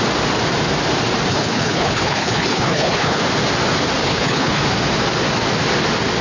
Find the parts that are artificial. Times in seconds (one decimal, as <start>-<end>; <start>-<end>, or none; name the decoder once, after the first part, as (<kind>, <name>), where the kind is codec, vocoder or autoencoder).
1.3-3.2 (codec, HILCodec); 4.0-4.6

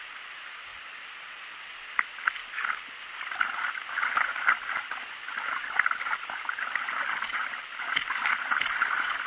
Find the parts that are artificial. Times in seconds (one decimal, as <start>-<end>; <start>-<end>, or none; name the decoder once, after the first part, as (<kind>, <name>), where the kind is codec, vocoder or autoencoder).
none

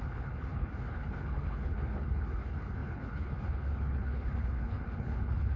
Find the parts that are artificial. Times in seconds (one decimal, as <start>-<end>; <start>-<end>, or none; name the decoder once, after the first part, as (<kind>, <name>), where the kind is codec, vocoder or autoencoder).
0.0-5.6 (codec, HILCodec)

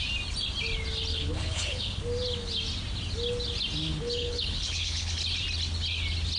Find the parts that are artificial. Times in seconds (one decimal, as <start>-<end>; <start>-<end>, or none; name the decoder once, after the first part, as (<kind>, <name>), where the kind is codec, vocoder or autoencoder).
1.1-2.0 (codec, HILCodec); 3.9-5.1

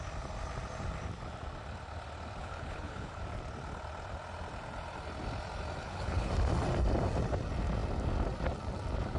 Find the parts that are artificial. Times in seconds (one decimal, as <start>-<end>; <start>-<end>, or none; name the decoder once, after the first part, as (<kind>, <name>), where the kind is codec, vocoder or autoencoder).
2.4-3.2 (codec, HILCodec); 5.8-6.3

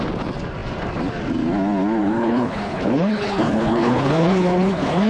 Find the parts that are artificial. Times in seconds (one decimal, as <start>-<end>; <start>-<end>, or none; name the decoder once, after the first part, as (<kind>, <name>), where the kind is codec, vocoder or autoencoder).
2.0-5.1 (codec, HILCodec)